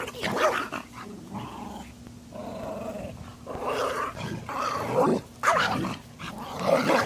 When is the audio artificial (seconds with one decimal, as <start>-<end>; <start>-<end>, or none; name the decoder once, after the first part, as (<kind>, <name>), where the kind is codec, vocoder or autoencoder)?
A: 2.4-3.3 (vocoder, BigVGAN v2); 5.1-6.3